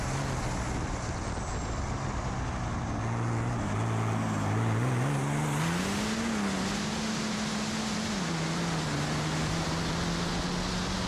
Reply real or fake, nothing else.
real